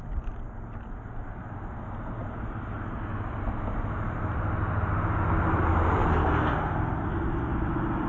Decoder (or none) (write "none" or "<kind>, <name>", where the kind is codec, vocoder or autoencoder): none